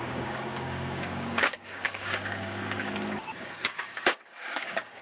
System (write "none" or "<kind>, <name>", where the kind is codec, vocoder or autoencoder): codec, DAC